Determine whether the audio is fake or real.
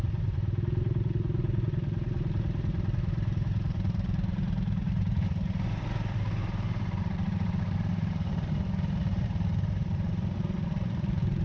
fake